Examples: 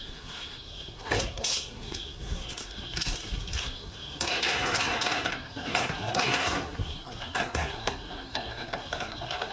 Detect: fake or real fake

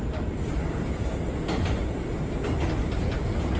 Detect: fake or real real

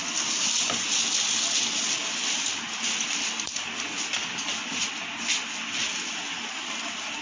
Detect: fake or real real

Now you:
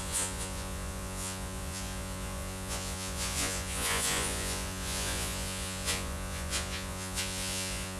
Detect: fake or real fake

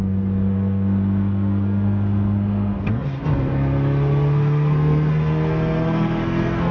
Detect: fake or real fake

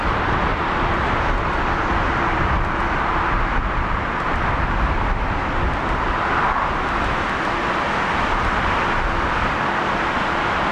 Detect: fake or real real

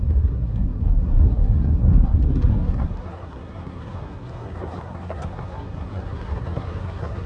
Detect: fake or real fake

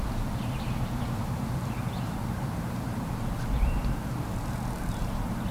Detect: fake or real fake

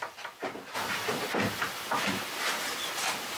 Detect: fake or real real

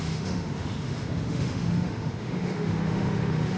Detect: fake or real fake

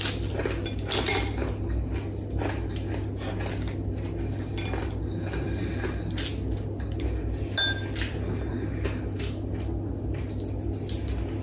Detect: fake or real real